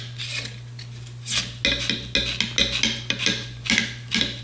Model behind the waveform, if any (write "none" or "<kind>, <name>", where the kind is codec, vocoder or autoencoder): none